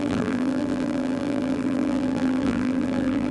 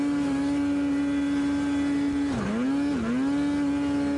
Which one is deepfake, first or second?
first